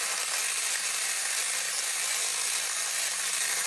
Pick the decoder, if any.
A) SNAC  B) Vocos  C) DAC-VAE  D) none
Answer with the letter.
D